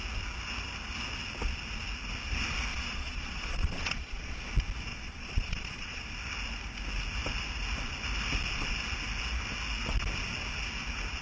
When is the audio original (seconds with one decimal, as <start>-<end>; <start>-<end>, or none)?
0.0-2.7; 4.4-4.9; 6.0-11.2